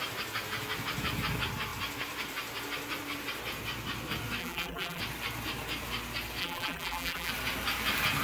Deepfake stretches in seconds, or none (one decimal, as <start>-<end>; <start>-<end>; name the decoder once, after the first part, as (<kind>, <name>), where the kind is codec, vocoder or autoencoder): 4.4-5.0 (vocoder, BigVGAN v2); 6.4-7.3